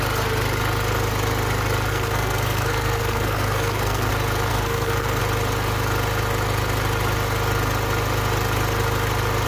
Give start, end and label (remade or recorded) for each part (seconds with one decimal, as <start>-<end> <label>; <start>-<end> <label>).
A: 0.0-1.9 recorded; 1.9-4.1 remade; 4.1-4.5 recorded; 4.5-5.2 remade; 5.2-9.5 recorded